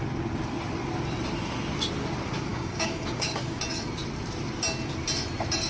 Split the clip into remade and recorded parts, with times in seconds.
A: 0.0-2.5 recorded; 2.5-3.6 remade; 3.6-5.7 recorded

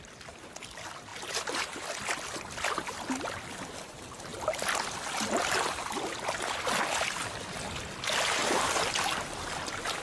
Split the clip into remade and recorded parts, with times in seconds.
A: 0.0-1.1 recorded; 1.1-1.8 remade; 1.8-8.4 recorded; 8.4-8.9 remade; 8.9-10.0 recorded

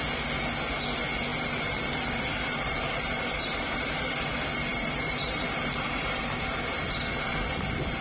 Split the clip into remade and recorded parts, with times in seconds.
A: 0.0-1.3 recorded; 1.3-4.2 remade; 4.2-4.7 recorded; 4.7-6.4 remade; 6.4-8.0 recorded

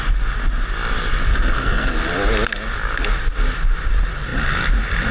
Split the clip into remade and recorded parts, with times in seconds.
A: 0.0-1.3 recorded; 1.3-1.9 remade; 1.9-5.1 recorded